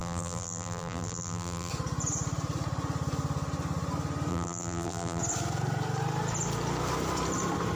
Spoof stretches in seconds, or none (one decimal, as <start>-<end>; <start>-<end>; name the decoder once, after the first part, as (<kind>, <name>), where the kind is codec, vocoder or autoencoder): 0.0-1.7 (vocoder, BigVGAN v2); 4.3-5.2